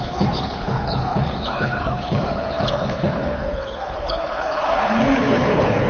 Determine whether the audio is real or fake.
fake